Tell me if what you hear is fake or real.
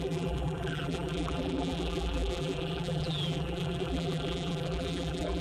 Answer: fake